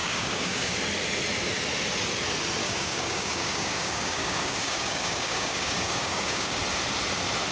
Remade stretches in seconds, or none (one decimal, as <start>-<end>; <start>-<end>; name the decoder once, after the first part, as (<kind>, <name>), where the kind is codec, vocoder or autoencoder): 0.0-0.8 (codec, DAC); 2.6-6.6